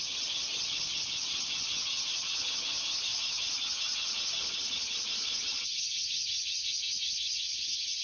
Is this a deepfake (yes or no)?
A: yes